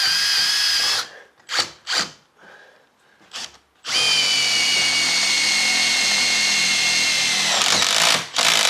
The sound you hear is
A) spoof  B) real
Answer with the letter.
B